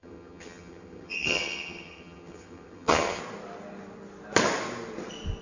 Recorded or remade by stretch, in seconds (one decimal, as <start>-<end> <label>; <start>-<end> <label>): 0.0-3.2 remade; 3.2-5.4 recorded